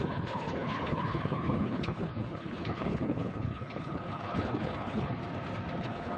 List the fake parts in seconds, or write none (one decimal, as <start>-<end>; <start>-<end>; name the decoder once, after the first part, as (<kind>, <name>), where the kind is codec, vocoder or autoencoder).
0.0-5.2 (codec, HILCodec); 5.8-6.2